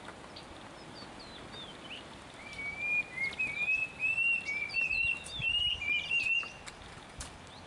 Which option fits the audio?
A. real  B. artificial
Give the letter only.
A